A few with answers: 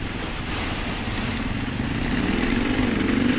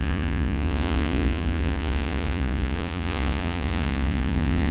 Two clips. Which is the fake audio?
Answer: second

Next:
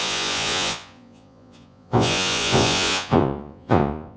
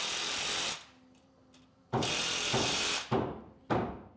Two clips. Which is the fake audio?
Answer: first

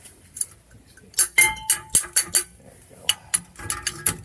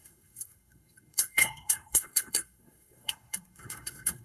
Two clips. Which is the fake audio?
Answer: second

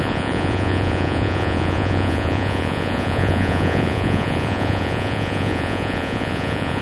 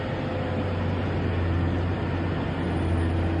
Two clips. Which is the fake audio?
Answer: first